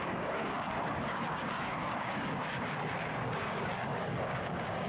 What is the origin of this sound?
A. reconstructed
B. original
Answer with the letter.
A